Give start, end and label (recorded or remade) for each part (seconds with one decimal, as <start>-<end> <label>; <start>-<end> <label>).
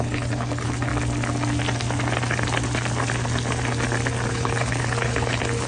0.0-0.9 remade; 0.9-4.3 recorded; 4.3-5.7 remade